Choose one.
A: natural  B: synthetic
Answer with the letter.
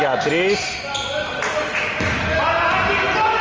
A